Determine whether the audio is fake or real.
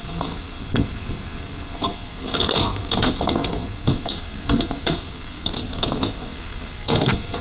fake